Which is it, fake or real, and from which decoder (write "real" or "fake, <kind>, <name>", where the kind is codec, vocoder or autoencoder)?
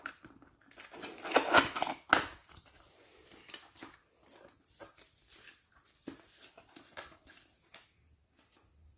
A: real